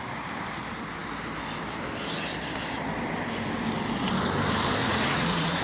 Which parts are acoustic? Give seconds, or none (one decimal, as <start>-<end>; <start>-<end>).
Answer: 0.0-4.8